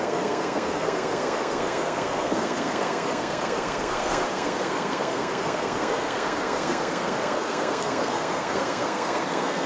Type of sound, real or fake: fake